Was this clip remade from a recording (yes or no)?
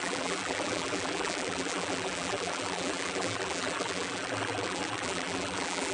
yes